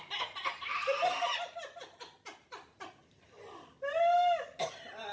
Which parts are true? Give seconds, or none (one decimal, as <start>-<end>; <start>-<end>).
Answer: 0.0-5.1